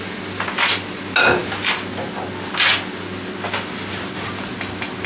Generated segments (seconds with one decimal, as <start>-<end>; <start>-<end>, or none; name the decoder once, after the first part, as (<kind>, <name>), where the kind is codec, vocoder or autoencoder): none